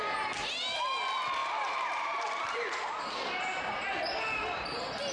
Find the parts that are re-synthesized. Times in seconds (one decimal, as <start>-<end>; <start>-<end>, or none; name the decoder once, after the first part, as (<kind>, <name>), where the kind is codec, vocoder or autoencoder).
1.4-3.6 (vocoder, BigVGAN v2)